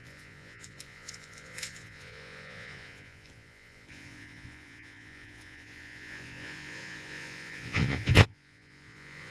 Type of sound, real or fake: fake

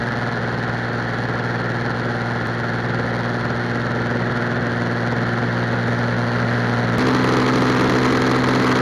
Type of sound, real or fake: real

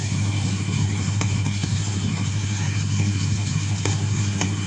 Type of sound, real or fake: fake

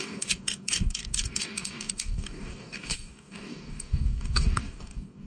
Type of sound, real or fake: fake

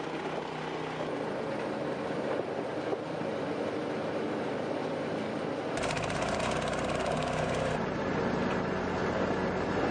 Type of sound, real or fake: real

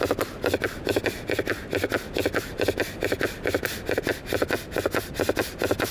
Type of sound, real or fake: real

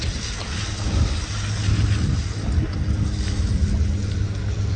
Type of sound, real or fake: real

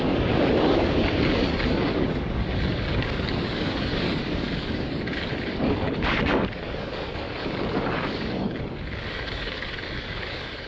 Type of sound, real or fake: fake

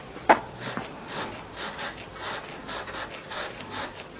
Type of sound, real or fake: real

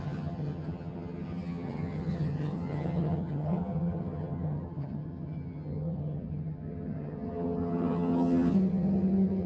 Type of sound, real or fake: fake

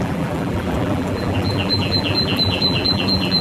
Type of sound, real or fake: fake